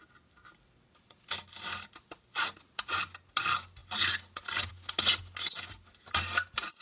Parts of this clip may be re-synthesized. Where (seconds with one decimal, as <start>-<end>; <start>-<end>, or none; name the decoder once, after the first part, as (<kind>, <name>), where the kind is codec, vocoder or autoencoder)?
none